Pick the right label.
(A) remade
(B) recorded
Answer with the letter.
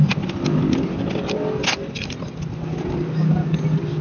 B